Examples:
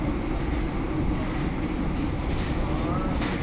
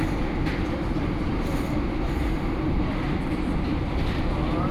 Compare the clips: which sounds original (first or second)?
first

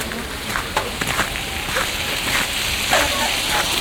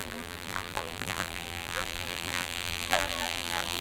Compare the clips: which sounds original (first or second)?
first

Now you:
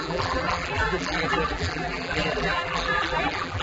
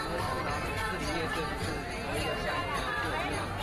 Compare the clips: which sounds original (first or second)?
second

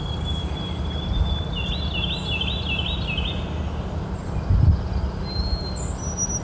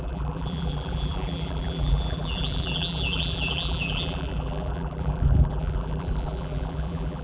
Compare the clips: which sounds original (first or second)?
first